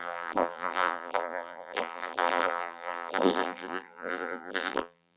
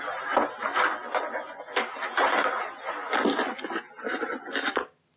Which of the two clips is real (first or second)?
second